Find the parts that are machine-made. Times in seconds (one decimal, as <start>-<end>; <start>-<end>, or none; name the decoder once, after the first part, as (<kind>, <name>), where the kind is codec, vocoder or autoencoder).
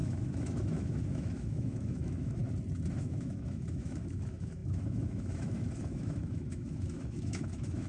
0.0-2.4 (autoencoder, DAC-VAE); 3.0-7.9